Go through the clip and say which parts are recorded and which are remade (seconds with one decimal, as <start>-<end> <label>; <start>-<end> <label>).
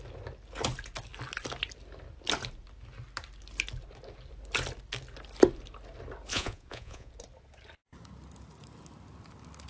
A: 0.0-6.3 recorded; 6.3-7.1 remade; 7.1-9.7 recorded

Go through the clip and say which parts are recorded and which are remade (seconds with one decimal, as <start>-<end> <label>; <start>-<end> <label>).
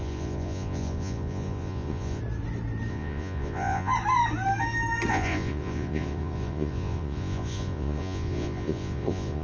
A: 0.0-2.2 remade; 2.2-2.9 recorded; 2.9-3.9 remade; 3.9-5.1 recorded; 5.1-9.4 remade